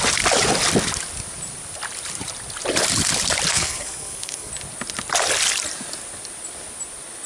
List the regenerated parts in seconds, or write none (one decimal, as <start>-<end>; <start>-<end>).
3.5-4.5